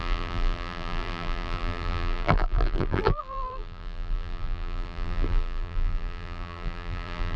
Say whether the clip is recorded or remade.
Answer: remade